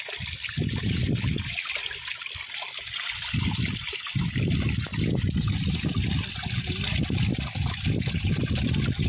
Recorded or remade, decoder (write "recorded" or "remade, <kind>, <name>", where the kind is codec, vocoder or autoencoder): recorded